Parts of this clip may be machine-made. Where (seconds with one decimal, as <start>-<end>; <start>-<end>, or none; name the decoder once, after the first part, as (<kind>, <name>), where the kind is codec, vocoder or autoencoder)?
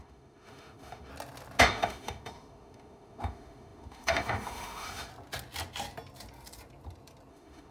0.0-1.1 (autoencoder, DAC-VAE); 1.6-5.1; 7.3-7.7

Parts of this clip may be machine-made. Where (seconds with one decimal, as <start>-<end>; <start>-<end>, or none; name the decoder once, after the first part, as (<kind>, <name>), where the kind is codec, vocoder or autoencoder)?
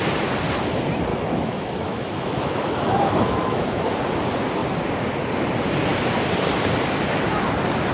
1.1-3.9 (autoencoder, DAC-VAE)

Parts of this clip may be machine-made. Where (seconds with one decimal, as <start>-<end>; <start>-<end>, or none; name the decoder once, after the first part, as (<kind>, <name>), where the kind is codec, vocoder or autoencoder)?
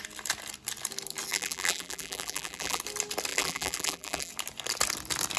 1.3-2.8 (vocoder, BigVGAN v2); 3.3-4.3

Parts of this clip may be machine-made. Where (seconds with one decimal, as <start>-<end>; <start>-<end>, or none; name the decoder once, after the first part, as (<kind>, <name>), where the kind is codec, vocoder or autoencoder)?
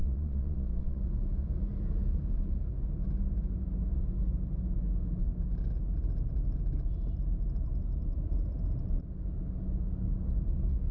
0.0-1.0 (vocoder, Vocos)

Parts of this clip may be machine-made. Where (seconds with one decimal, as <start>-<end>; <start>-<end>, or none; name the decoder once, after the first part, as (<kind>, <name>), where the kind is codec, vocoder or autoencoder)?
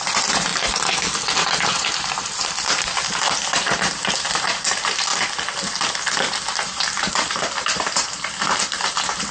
0.0-0.5 (vocoder, BigVGAN v2); 1.7-5.1; 6.5-9.3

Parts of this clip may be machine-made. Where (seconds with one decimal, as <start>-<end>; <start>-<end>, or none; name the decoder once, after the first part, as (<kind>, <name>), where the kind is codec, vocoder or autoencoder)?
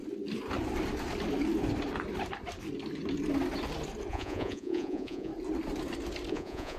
4.1-5.3 (vocoder, Vocos); 6.3-6.8